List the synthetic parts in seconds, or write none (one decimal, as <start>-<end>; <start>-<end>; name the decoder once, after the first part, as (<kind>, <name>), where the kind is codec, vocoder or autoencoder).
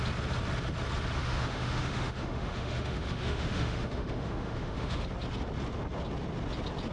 1.2-5.0 (autoencoder, DAC-VAE)